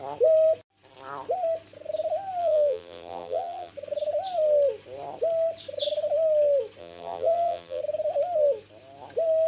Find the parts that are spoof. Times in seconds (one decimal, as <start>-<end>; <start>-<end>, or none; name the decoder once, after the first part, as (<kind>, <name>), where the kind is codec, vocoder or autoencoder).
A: 2.4-3.7 (vocoder, BigVGAN v2); 6.8-7.8

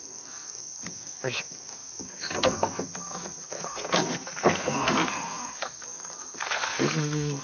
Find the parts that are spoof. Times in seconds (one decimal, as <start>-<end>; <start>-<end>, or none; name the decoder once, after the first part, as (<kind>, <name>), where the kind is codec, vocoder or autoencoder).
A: 0.0-7.4 (codec, SNAC)

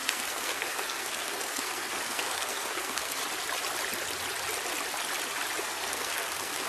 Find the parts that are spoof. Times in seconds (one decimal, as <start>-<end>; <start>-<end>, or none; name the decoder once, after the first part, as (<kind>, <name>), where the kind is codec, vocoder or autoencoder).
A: 0.0-3.2 (codec, SNAC); 5.6-6.7